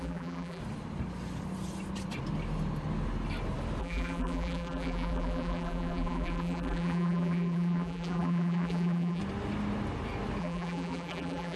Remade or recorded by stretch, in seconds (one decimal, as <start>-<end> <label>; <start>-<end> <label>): 0.0-0.6 remade; 0.6-3.8 recorded; 3.8-9.2 remade; 9.2-10.4 recorded; 10.4-11.6 remade